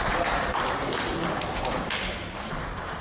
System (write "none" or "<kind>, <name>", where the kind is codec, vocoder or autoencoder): vocoder, BigVGAN v2